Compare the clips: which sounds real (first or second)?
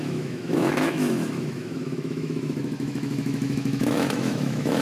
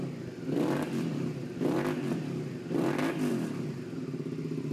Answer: second